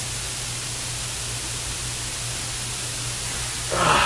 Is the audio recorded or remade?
recorded